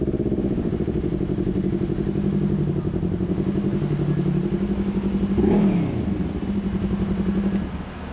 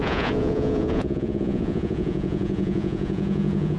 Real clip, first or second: first